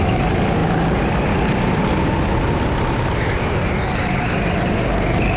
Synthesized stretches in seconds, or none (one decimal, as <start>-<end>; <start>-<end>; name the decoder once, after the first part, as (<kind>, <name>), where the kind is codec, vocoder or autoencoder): none